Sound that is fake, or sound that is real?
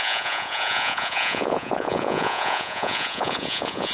fake